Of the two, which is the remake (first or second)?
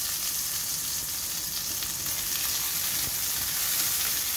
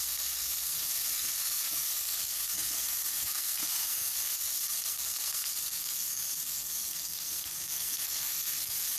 second